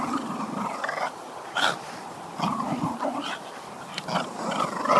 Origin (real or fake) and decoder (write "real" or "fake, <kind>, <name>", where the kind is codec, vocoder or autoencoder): real